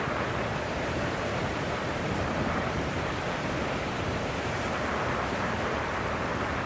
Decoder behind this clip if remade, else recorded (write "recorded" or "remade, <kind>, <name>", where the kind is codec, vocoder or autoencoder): remade, vocoder, BigVGAN v2